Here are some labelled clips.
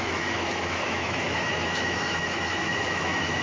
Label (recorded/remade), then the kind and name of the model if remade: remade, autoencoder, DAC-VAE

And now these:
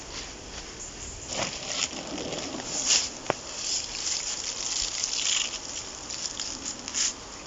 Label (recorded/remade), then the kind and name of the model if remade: recorded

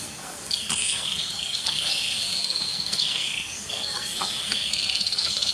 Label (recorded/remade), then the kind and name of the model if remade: remade, codec, SNAC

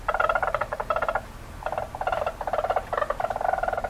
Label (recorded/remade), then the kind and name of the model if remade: recorded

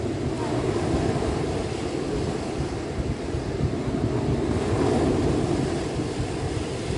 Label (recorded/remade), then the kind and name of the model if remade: recorded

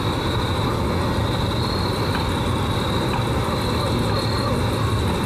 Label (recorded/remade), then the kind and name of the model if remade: recorded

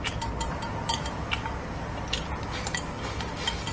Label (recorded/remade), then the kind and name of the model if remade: recorded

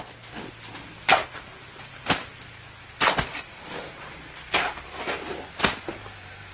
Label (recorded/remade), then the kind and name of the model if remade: recorded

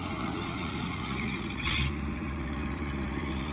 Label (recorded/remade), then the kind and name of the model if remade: remade, vocoder, Vocos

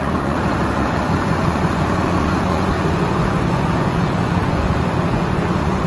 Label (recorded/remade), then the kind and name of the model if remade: remade, vocoder, Vocos